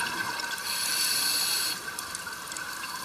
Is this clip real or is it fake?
fake